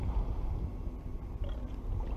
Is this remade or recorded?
recorded